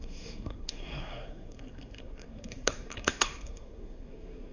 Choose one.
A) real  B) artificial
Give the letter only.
B